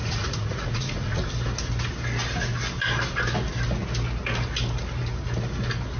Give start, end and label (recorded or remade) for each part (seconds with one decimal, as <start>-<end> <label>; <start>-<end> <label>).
0.0-1.3 remade; 1.3-6.0 recorded